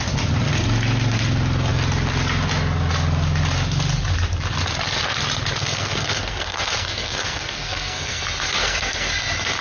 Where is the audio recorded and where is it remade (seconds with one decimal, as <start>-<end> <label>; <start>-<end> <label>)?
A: 0.0-5.6 recorded; 5.6-8.2 remade; 8.2-8.6 recorded; 8.6-9.1 remade; 9.1-9.6 recorded